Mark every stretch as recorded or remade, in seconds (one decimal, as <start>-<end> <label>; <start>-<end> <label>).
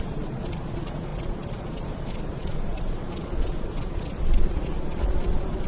0.0-5.7 remade